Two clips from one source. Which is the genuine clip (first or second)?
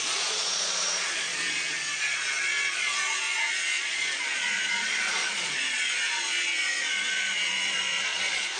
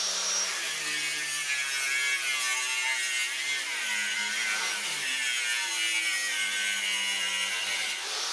second